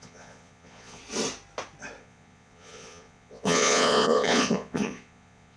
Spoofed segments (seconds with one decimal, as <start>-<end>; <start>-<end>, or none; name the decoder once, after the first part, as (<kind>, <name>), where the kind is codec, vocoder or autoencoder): 0.0-1.0 (vocoder, Vocos); 2.0-5.6